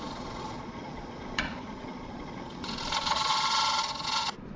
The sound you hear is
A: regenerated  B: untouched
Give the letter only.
A